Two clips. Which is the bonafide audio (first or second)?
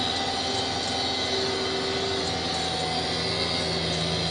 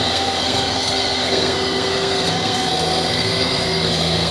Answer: first